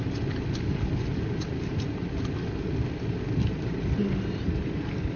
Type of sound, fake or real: real